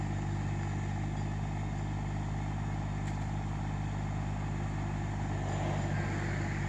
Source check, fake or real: real